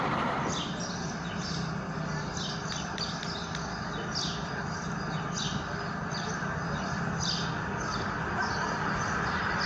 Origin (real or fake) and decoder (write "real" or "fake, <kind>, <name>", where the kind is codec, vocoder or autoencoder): real